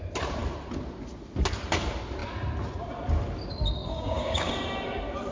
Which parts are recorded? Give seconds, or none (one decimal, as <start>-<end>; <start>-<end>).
0.0-3.8; 4.5-5.3